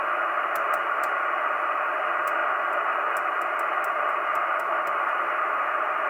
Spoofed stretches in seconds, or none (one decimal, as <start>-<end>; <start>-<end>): none